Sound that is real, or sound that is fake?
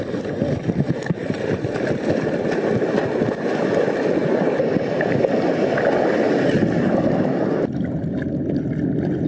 real